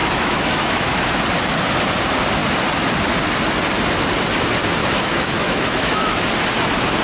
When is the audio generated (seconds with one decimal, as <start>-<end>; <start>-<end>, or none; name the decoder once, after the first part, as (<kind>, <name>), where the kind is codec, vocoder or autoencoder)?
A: 0.0-1.2 (autoencoder, DAC-VAE); 4.8-6.3